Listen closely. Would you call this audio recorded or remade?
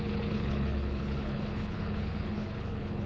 remade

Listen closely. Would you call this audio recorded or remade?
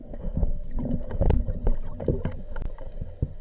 recorded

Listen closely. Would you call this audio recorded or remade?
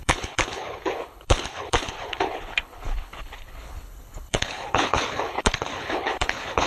remade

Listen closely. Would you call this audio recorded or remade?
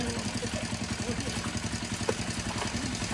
recorded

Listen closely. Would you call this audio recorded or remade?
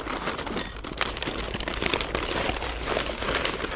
recorded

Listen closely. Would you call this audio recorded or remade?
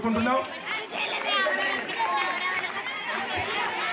recorded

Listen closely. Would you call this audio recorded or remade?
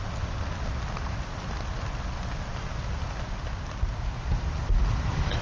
recorded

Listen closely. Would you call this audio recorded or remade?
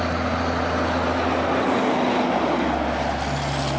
recorded